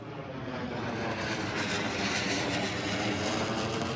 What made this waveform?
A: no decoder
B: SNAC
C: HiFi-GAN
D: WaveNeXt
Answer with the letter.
A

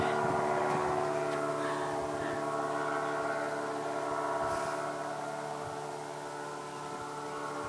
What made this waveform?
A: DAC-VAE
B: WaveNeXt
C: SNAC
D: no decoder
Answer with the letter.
D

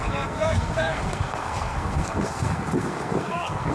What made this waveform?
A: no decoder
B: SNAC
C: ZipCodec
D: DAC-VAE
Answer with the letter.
B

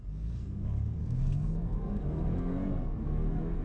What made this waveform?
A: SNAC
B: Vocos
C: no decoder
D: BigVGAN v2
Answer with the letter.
A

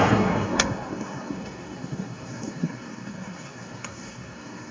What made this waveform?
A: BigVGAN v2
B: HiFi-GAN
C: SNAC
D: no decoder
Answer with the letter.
C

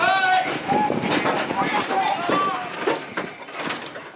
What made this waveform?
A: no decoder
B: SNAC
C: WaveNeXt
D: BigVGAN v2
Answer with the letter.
A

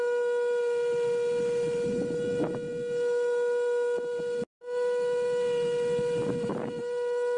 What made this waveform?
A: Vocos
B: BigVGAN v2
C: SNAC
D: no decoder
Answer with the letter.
D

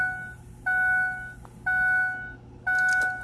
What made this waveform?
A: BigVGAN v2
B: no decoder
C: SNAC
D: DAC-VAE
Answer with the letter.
B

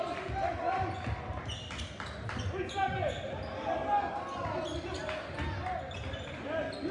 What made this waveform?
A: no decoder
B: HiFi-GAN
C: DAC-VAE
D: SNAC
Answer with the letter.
A